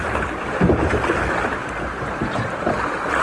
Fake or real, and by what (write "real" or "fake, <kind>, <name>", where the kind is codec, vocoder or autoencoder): real